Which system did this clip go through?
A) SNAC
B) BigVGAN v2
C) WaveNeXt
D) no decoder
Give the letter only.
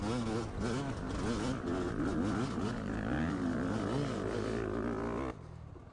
D